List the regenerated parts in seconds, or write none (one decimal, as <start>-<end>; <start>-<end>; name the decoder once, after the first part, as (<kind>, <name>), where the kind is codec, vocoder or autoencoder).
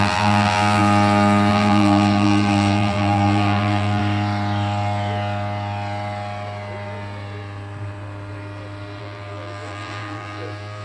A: 0.0-0.8 (vocoder, BigVGAN v2); 1.5-4.0; 9.0-10.8